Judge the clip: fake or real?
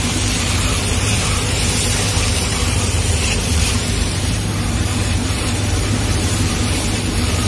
fake